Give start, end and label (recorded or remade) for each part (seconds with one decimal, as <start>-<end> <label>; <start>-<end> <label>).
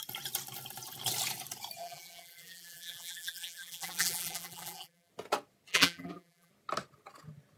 0.0-1.8 recorded; 1.8-5.1 remade; 5.1-5.7 recorded; 5.7-6.5 remade; 6.5-7.6 recorded